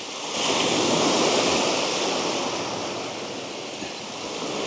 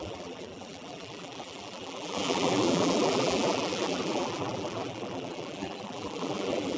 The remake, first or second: second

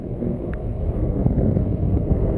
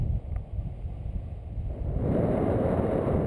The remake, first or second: first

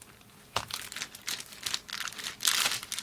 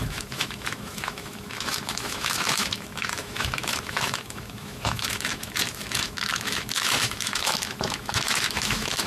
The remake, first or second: second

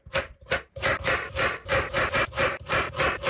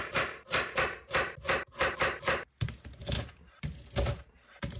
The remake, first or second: first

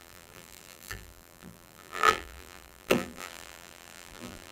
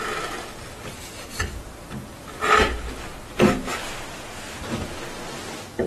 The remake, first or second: first